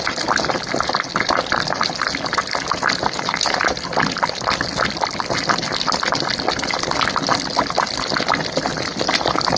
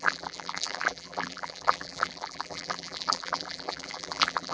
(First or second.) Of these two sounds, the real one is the first